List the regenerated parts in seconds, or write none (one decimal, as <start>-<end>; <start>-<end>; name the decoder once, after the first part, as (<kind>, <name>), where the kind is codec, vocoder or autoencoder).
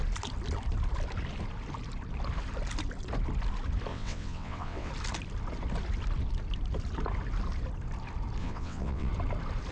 3.9-4.9 (vocoder, WaveNeXt); 8.4-9.1